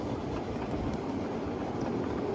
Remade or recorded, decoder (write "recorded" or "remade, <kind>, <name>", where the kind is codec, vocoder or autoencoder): recorded